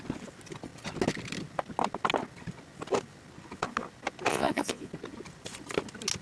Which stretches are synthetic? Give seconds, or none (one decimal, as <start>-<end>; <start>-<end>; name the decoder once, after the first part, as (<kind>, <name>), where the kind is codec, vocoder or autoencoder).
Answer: 4.3-4.9 (vocoder, Vocos)